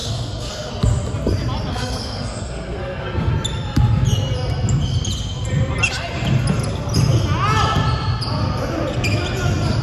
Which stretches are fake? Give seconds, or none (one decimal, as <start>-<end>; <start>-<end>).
0.0-0.7; 1.7-3.3